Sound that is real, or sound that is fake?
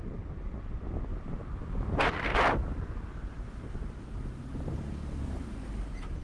real